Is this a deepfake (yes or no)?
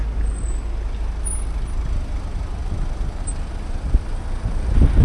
no